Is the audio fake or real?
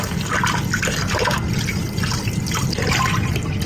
fake